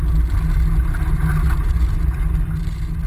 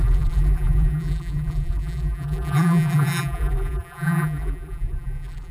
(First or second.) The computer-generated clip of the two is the second